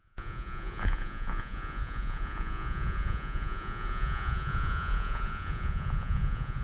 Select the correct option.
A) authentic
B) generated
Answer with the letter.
B